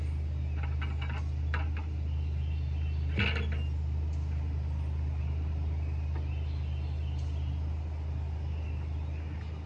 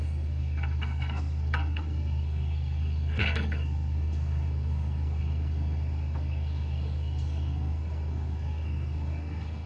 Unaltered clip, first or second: first